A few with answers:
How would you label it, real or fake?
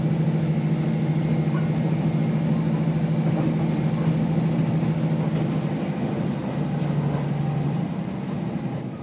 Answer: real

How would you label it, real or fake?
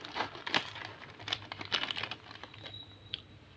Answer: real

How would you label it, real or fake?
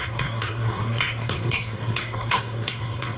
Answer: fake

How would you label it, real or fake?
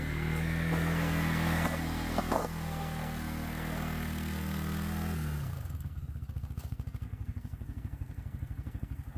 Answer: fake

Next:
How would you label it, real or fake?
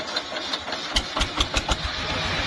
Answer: real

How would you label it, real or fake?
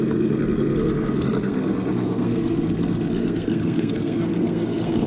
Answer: fake